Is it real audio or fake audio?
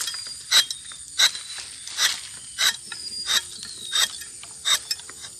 real